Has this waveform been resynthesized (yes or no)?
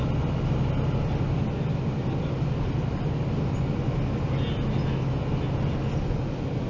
no